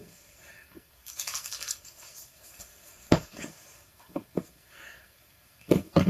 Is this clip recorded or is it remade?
remade